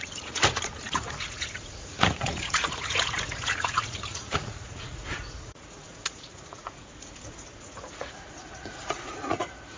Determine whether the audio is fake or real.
fake